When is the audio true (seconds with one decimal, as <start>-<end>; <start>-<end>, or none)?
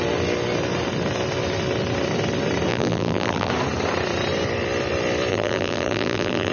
0.0-2.7; 3.5-5.3